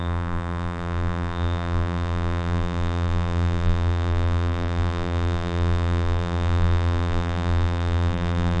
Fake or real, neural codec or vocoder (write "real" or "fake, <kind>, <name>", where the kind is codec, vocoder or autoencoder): fake, vocoder, BigVGAN v2